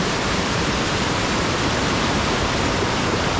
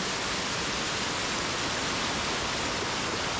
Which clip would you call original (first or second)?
second